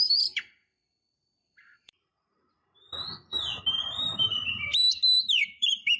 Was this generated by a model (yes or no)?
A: yes